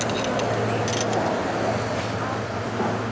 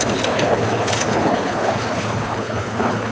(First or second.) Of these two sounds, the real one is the first